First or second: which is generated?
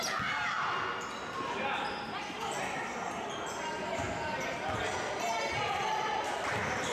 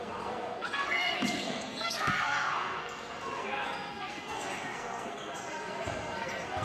second